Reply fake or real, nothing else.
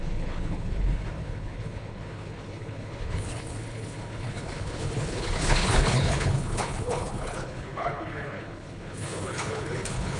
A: fake